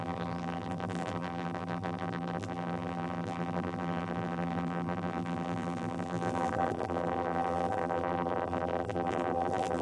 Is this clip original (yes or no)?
no